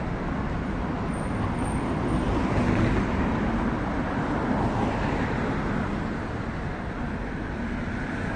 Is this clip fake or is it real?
real